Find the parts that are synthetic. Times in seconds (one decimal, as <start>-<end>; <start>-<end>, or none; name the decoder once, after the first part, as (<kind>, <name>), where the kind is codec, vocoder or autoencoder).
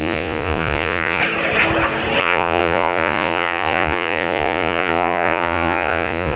0.0-1.2 (vocoder, Vocos); 2.2-6.4